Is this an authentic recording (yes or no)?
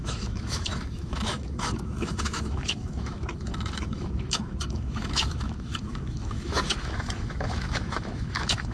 no